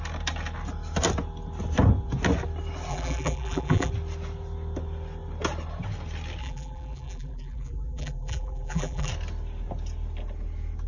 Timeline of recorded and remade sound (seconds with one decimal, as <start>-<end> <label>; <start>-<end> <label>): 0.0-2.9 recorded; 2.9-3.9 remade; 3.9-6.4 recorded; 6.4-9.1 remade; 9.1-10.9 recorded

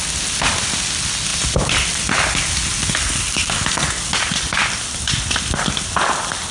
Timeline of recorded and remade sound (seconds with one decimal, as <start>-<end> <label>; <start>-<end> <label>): 0.0-6.5 recorded

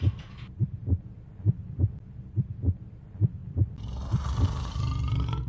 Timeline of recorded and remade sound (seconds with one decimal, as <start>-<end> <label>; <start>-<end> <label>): 0.0-5.5 recorded